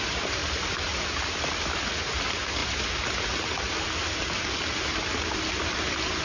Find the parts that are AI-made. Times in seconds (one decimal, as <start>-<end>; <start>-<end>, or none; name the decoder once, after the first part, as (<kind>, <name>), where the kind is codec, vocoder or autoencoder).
none